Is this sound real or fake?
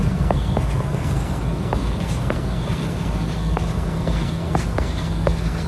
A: fake